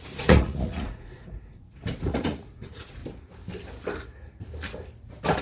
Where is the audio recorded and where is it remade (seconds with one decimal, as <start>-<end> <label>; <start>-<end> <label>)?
0.0-3.0 remade; 3.0-5.4 recorded